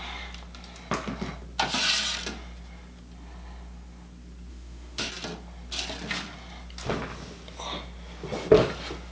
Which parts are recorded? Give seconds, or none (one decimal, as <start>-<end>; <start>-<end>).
0.0-4.5; 5.1-9.1